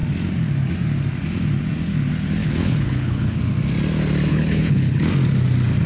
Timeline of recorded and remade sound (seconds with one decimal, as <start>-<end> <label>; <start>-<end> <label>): 0.0-2.4 recorded; 2.4-3.4 remade; 3.4-4.3 recorded; 4.3-5.1 remade; 5.1-5.9 recorded